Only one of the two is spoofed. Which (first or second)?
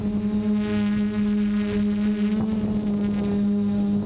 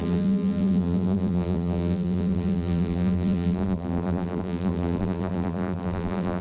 second